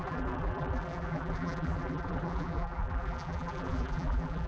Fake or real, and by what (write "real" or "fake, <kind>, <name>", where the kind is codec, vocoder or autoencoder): fake, vocoder, BigVGAN v2